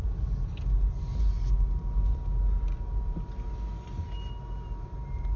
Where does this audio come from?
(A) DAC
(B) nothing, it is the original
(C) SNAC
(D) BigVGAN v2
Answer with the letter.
B